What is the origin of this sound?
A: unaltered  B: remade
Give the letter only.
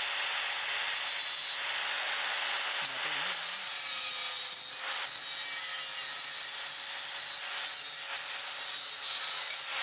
A